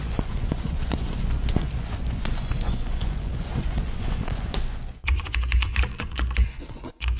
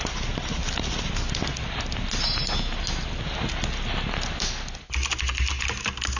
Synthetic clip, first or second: first